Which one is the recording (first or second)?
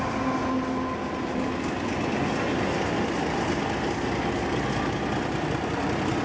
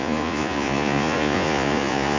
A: first